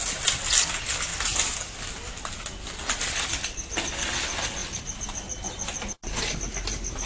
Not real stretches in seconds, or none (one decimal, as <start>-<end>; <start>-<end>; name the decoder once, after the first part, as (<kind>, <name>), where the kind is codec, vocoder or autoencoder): none